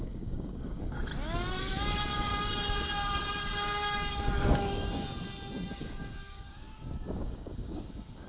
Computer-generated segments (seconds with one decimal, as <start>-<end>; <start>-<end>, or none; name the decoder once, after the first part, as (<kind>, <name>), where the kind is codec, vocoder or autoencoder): 0.0-1.1 (codec, DAC); 1.6-2.3; 4.1-5.1; 5.7-8.3